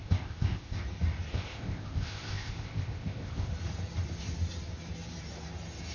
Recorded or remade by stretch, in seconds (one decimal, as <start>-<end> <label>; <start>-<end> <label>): 0.0-0.8 remade; 0.8-1.3 recorded; 1.3-3.5 remade; 3.5-5.9 recorded